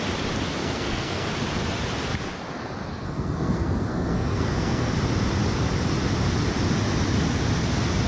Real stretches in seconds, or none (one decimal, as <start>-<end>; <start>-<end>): 0.0-0.6; 1.3-2.9; 4.9-8.1